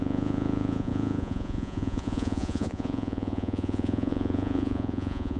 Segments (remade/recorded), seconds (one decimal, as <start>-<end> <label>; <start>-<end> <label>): 0.0-5.4 remade